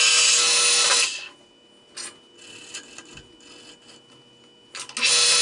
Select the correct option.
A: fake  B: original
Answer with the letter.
B